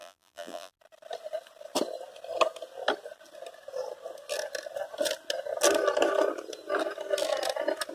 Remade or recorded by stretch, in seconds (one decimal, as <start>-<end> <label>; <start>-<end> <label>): 0.0-0.7 remade; 0.7-7.9 recorded